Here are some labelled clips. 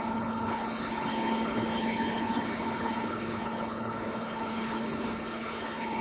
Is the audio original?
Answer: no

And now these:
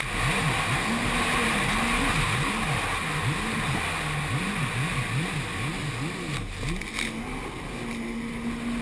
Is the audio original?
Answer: yes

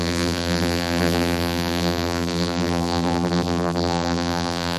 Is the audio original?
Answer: no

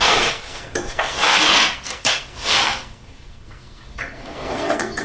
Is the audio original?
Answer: no